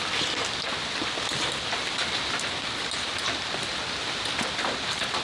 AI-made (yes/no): no